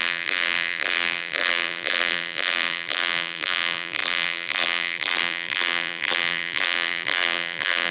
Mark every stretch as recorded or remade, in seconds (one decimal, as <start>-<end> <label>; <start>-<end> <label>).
0.0-7.9 remade